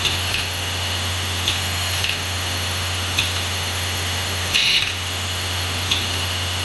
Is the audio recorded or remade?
remade